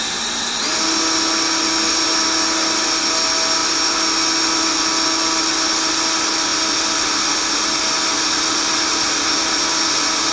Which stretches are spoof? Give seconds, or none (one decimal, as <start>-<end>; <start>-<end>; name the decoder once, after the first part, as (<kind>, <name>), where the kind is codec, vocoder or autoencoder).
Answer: none